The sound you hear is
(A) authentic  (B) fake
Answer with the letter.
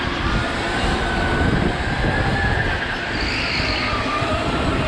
A